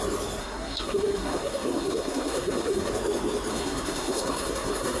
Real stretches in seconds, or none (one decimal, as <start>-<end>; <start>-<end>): 0.0-0.4; 2.9-3.5